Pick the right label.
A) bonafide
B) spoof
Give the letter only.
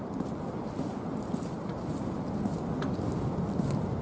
A